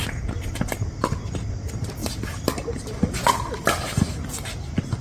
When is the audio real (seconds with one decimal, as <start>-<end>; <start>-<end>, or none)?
0.0-5.0